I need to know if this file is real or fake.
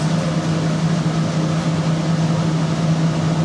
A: real